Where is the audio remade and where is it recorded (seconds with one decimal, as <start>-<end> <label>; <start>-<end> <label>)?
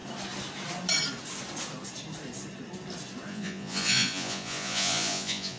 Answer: 0.0-3.3 recorded; 3.3-5.6 remade